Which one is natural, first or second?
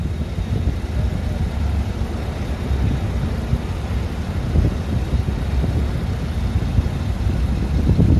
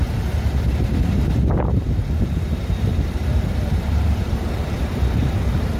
first